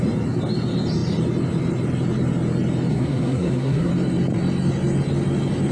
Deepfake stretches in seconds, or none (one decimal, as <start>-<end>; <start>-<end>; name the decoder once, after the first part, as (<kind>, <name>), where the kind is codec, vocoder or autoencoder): 2.9-3.9 (codec, SNAC)